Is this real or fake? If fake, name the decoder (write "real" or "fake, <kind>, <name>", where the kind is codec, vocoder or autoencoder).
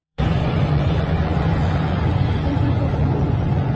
fake, vocoder, Vocos